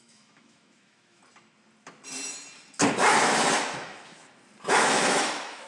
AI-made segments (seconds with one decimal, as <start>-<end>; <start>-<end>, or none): 0.0-1.2; 3.7-4.2; 4.7-5.7